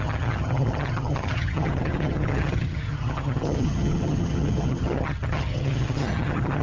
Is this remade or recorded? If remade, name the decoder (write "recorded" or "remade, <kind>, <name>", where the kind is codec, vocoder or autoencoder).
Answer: remade, vocoder, HiFi-GAN